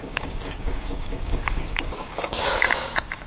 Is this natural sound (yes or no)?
no